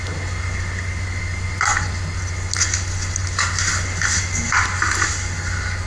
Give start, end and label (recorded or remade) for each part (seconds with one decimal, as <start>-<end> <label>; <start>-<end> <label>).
0.0-5.9 recorded